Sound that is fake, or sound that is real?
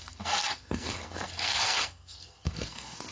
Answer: fake